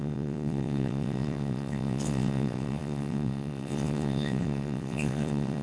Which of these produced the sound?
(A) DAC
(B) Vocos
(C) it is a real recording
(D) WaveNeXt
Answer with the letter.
D